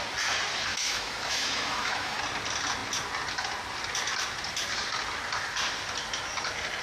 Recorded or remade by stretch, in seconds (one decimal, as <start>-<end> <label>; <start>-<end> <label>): 0.0-0.7 recorded; 0.7-2.2 remade; 2.2-6.8 recorded